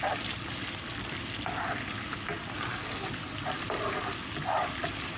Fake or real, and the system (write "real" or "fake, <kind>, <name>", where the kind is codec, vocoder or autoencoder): real